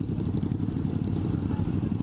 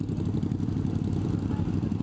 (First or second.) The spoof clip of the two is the first